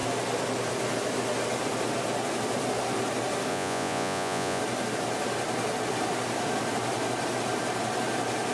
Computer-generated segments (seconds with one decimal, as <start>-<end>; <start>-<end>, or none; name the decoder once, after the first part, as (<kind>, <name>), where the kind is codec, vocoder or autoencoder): 3.5-4.6 (vocoder, Vocos)